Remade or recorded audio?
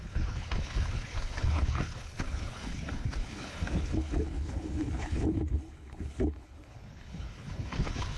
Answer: remade